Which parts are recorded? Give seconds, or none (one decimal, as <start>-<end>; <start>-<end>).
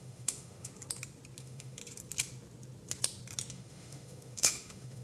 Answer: 0.7-1.4; 1.8-3.5